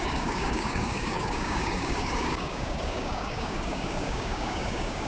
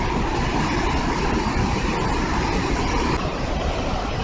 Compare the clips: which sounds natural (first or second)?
second